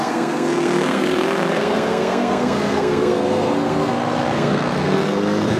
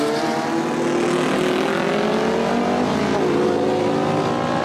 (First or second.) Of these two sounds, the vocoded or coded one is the first